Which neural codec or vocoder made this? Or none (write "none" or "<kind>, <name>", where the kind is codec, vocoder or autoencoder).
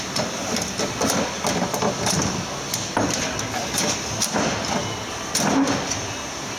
none